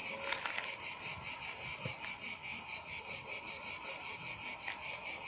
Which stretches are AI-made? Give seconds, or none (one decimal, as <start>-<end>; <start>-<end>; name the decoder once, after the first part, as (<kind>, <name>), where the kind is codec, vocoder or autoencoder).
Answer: none